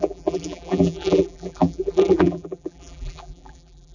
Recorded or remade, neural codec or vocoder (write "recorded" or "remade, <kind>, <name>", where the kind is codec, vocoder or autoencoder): remade, vocoder, BigVGAN v2